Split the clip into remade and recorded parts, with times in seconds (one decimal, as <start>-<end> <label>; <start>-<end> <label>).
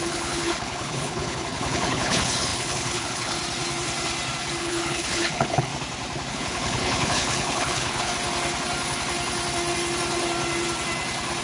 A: 0.0-3.4 remade; 3.4-4.6 recorded; 4.6-5.7 remade; 5.7-6.3 recorded; 6.3-8.1 remade; 8.1-11.4 recorded